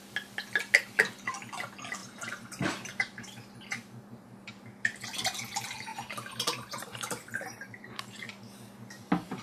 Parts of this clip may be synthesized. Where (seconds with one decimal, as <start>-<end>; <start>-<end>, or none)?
2.0-4.5; 5.9-8.3